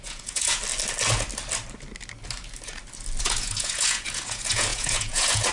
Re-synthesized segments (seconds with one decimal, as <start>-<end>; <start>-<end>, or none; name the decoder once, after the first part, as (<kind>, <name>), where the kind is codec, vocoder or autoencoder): 0.0-0.6 (vocoder, Vocos); 3.2-5.5

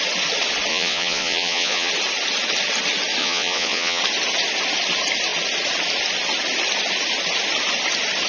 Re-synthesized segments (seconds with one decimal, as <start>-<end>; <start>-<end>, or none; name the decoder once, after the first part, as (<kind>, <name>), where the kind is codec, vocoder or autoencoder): 0.7-1.9 (vocoder, Vocos); 3.2-4.0

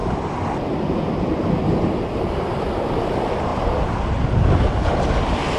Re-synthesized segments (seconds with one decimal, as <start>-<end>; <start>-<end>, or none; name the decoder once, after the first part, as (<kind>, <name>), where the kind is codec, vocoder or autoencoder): none

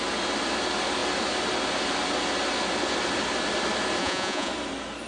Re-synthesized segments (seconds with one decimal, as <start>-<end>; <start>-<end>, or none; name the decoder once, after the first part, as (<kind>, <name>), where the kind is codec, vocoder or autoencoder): 4.0-4.5 (vocoder, Vocos)

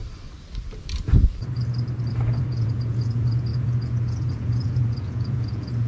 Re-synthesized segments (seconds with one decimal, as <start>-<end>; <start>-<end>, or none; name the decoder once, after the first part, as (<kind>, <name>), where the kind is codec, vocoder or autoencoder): 2.1-5.9 (vocoder, Vocos)

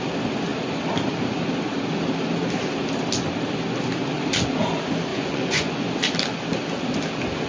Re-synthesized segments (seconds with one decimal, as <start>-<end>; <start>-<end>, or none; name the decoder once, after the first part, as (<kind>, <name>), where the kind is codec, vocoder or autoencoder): 5.1-5.9 (vocoder, Vocos)

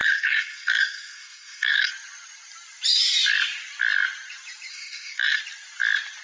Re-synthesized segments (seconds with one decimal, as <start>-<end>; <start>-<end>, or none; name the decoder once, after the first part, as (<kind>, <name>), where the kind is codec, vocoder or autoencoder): 0.0-1.9 (codec, SNAC); 4.7-5.4

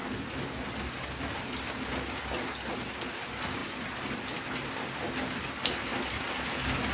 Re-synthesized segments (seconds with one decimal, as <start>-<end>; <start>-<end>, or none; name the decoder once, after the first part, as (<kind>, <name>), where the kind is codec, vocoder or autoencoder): none